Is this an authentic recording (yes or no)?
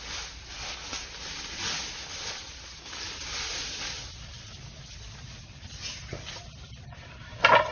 yes